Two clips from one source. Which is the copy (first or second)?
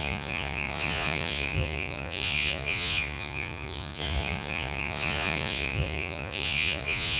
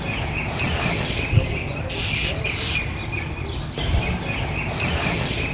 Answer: first